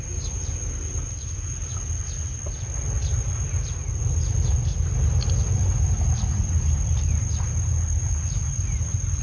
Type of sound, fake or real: real